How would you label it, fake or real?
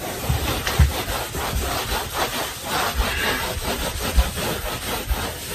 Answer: real